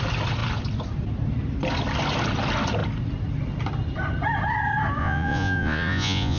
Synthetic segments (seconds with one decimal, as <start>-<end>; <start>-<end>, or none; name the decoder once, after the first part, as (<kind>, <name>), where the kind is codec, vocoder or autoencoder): 5.0-6.4 (vocoder, Vocos)

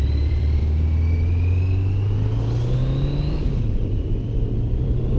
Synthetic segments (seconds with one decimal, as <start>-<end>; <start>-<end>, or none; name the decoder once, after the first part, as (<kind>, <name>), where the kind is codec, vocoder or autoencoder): 0.0-0.6 (vocoder, BigVGAN v2); 3.7-5.2